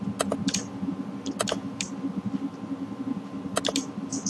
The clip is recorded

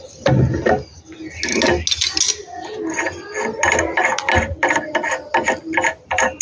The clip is recorded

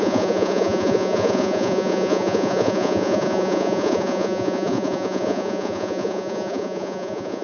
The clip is remade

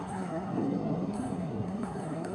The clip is remade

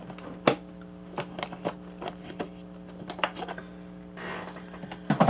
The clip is recorded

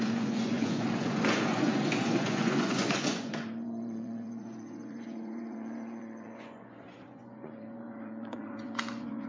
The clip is remade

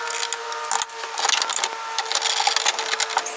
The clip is recorded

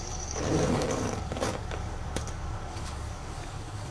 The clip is remade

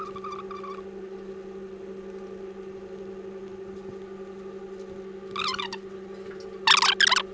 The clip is recorded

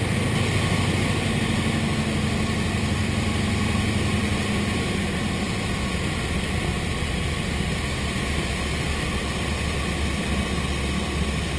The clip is recorded